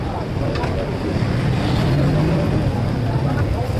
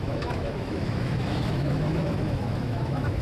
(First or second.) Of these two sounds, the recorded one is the first